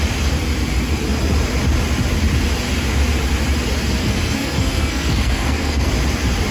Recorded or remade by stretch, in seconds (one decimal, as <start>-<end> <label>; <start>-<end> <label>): 0.0-4.0 recorded; 4.0-5.9 remade; 5.9-6.5 recorded